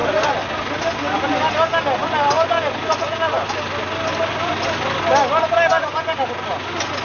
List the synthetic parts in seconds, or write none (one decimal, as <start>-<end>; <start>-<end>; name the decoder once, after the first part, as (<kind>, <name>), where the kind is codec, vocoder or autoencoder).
none

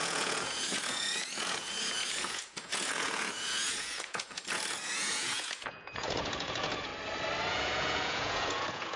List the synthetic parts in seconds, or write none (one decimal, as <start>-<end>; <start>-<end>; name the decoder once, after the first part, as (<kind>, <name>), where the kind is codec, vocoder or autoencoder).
0.0-6.9 (vocoder, Vocos); 7.5-9.0

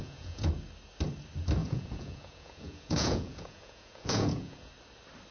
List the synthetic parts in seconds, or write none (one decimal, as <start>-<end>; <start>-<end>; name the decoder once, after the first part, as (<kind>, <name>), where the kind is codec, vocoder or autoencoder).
0.0-0.5 (vocoder, Vocos); 1.6-4.7

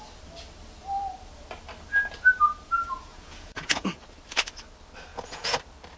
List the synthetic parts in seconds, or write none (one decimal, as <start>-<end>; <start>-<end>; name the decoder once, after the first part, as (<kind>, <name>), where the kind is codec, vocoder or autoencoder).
3.1-4.0 (vocoder, Vocos); 5.1-5.6

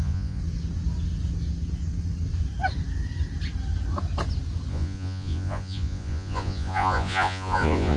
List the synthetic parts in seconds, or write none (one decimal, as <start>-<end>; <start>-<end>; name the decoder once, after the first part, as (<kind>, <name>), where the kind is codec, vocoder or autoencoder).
0.0-0.4 (vocoder, Vocos); 4.7-8.0

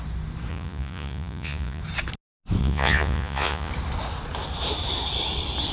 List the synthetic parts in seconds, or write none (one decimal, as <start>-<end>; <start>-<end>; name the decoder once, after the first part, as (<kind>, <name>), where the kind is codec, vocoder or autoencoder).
0.5-1.8 (vocoder, Vocos); 2.6-3.7

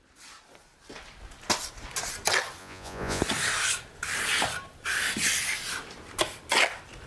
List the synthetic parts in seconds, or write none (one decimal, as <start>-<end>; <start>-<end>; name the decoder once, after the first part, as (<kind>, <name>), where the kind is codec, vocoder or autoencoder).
2.6-3.2 (vocoder, Vocos)

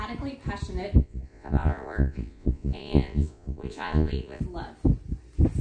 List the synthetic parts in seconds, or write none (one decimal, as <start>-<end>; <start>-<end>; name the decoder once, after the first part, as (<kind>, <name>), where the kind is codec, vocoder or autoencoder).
1.0-4.4 (vocoder, Vocos)